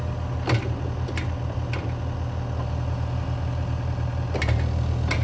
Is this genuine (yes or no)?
yes